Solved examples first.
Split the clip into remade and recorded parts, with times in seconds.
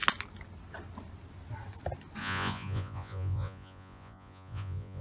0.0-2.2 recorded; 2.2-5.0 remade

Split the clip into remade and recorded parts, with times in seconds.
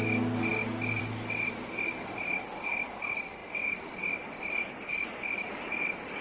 0.0-6.2 recorded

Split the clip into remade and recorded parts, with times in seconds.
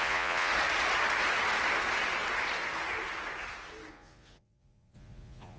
0.0-0.5 remade; 0.5-3.9 recorded; 3.9-5.6 remade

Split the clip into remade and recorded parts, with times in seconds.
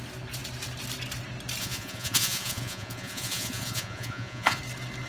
0.0-1.6 recorded; 1.6-4.6 remade; 4.6-5.1 recorded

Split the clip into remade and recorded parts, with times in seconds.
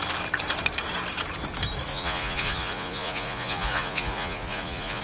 0.0-1.9 recorded; 1.9-5.0 remade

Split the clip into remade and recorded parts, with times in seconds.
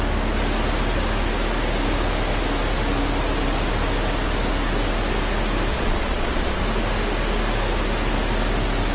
0.0-5.7 recorded; 5.7-6.6 remade; 6.6-8.9 recorded